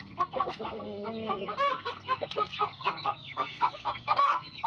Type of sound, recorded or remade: remade